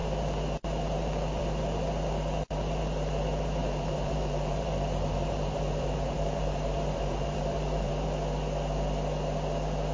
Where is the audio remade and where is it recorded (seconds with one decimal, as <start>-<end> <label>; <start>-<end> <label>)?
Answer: 0.0-3.6 recorded; 3.6-7.9 remade; 7.9-9.9 recorded